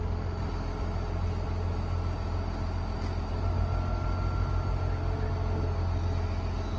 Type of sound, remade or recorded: recorded